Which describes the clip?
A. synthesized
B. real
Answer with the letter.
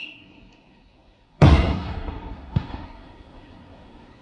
A